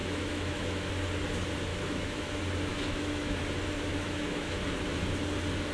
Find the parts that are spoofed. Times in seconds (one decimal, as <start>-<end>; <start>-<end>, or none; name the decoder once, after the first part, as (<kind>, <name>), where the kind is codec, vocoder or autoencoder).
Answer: 0.0-0.9 (autoencoder, DAC-VAE); 1.7-2.3; 2.7-3.4; 3.9-4.6